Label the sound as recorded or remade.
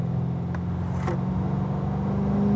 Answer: recorded